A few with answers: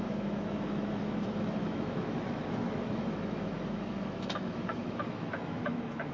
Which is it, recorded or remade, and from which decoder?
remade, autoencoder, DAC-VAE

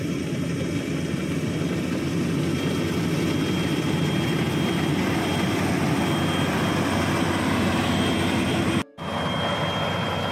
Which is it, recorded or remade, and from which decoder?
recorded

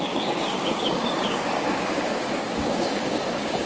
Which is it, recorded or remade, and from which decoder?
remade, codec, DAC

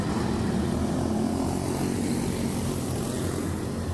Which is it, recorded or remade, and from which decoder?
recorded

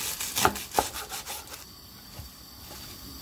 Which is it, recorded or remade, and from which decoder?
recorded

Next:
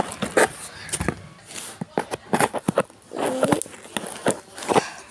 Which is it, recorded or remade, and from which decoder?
recorded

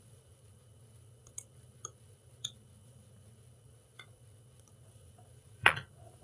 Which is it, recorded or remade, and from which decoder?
remade, vocoder, Vocos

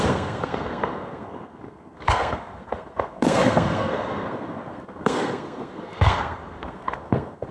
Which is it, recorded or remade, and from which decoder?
remade, codec, SNAC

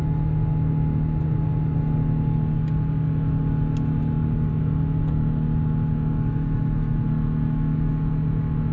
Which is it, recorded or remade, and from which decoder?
recorded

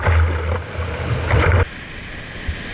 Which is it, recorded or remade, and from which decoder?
recorded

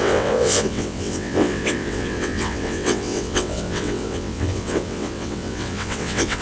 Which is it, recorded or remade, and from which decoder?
remade, vocoder, WaveNeXt